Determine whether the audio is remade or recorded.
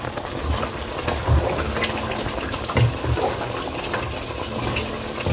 recorded